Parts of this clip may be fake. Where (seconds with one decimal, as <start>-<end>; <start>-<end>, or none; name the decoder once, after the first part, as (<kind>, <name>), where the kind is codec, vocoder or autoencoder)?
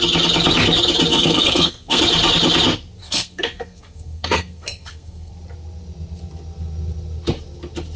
1.1-2.0 (codec, SNAC); 3.0-5.3